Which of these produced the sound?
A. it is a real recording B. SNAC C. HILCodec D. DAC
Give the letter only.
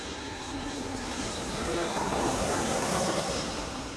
B